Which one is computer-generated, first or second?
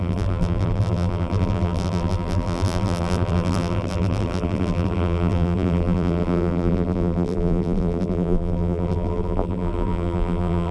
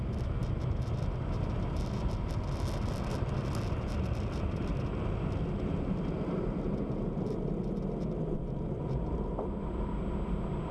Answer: first